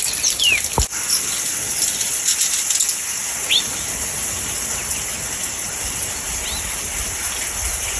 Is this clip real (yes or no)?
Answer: yes